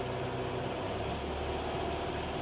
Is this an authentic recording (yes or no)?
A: yes